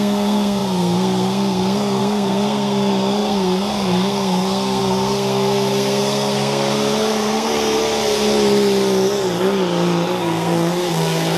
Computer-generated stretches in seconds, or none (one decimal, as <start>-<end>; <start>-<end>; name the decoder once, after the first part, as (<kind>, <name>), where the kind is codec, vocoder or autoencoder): 0.0-7.8 (codec, SNAC); 10.2-11.4